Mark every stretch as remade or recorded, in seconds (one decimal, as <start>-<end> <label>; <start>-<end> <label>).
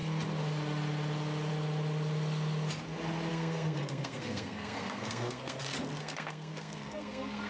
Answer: 0.0-3.3 recorded; 3.3-5.6 remade; 5.6-6.0 recorded; 6.0-7.5 remade